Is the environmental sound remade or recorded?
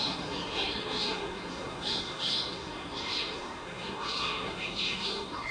remade